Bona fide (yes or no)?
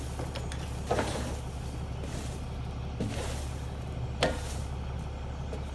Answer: yes